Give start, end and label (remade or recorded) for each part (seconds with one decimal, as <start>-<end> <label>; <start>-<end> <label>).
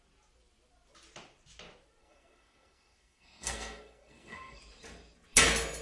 0.0-2.0 recorded; 2.0-4.6 remade; 4.6-5.8 recorded